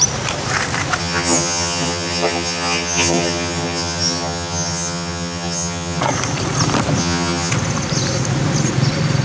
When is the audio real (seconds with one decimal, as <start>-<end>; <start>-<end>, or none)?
0.0-1.0; 6.0-7.0; 7.5-9.2